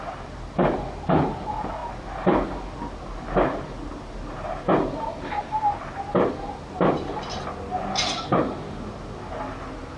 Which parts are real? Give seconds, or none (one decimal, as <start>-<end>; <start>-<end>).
0.0-10.0